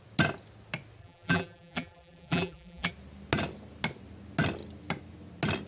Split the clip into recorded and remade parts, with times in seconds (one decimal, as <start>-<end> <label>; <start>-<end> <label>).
0.0-1.0 recorded; 1.0-2.9 remade; 2.9-5.7 recorded

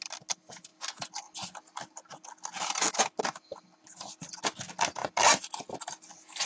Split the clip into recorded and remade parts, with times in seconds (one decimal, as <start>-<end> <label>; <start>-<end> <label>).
0.0-6.5 recorded

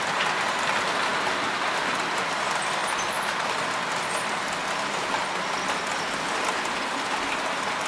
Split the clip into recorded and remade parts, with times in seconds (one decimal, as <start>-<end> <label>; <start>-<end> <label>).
0.0-7.9 recorded